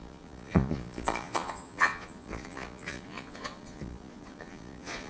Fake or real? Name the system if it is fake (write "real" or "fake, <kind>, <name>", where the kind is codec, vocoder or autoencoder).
fake, vocoder, Vocos